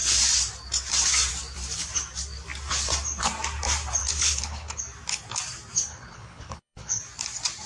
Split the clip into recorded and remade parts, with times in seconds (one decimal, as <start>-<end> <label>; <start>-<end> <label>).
0.0-4.0 recorded; 4.0-4.8 remade; 4.8-5.9 recorded; 5.9-7.0 remade; 7.0-7.7 recorded

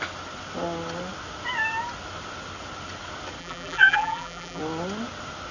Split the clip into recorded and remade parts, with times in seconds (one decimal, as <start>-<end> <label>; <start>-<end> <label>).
0.0-3.4 recorded; 3.4-4.6 remade; 4.6-5.5 recorded

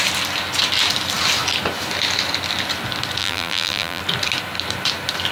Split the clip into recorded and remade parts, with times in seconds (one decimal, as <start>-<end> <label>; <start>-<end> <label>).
0.0-3.2 recorded; 3.2-4.0 remade; 4.0-5.3 recorded

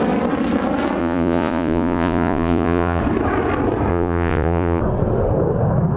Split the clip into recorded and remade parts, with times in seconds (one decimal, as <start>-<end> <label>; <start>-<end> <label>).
0.0-1.0 recorded; 1.0-3.0 remade; 3.0-3.9 recorded; 3.9-4.8 remade; 4.8-6.0 recorded

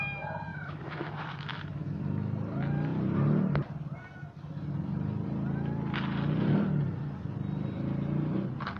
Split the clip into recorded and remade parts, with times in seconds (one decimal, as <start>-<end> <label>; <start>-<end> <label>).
0.0-0.5 recorded; 0.5-2.0 remade; 2.0-8.8 recorded

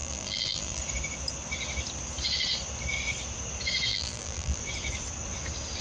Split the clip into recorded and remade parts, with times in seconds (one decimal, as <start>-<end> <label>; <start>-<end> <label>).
0.0-0.8 remade; 0.8-3.9 recorded; 3.9-4.6 remade; 4.6-5.8 recorded

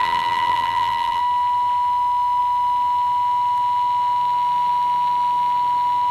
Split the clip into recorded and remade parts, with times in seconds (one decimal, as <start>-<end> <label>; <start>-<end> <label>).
0.0-1.2 remade; 1.2-6.1 recorded

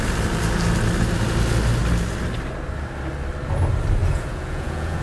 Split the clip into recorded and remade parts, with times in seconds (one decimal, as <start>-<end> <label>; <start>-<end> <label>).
0.0-4.0 recorded; 4.0-5.0 remade